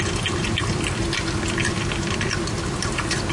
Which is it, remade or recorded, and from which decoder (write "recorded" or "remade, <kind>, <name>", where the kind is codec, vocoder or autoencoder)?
recorded